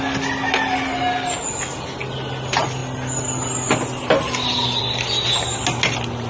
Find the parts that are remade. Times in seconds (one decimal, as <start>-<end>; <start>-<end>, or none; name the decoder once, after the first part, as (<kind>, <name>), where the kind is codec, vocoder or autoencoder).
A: none